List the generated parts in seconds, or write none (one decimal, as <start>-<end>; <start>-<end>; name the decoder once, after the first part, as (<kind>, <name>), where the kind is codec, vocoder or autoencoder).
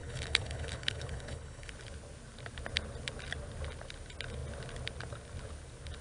0.0-1.7 (codec, HILCodec)